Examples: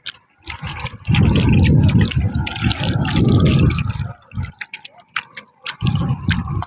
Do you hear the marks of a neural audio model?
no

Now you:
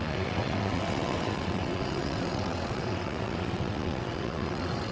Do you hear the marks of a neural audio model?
yes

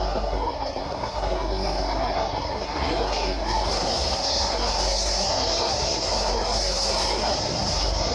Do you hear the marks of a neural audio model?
yes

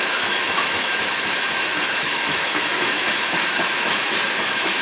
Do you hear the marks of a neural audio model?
yes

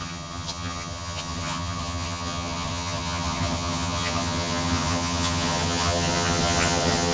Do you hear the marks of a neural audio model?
yes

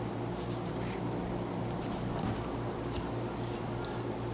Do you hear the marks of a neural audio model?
no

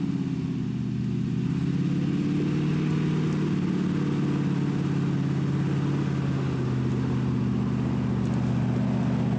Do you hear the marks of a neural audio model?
no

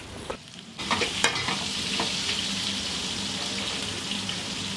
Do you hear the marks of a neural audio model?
no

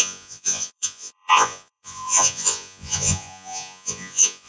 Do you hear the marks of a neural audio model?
yes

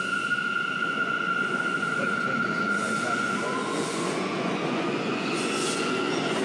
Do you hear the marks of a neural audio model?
yes